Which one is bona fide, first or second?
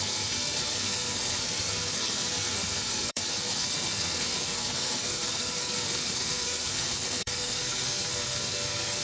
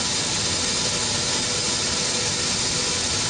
second